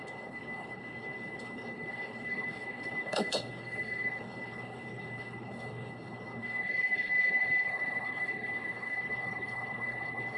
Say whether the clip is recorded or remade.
remade